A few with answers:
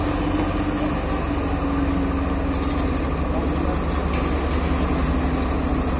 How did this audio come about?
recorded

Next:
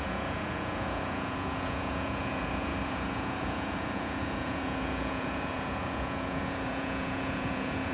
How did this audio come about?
remade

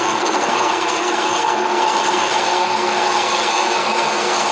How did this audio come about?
remade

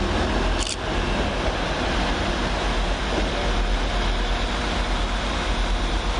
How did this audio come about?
recorded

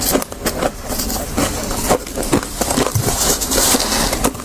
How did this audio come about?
recorded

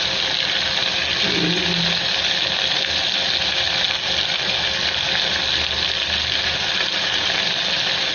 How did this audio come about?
recorded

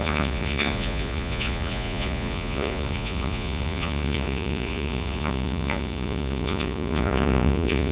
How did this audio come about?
remade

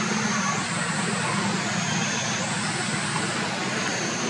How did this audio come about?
recorded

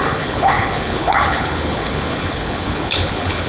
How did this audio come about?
remade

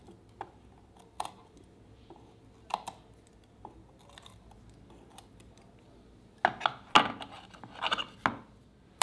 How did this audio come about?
recorded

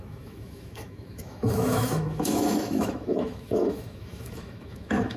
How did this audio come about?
remade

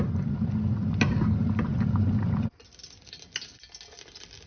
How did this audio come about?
recorded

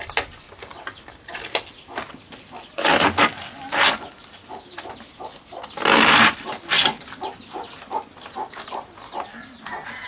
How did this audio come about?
recorded